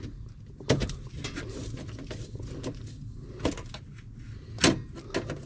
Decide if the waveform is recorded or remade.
recorded